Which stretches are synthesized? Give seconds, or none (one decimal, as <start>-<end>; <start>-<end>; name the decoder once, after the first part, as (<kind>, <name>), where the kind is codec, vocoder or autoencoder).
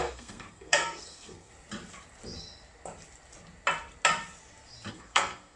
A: 0.0-1.5 (codec, SNAC); 4.9-5.6